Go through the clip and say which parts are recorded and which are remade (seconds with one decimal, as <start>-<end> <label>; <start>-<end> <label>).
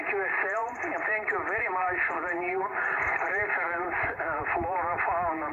0.0-5.5 remade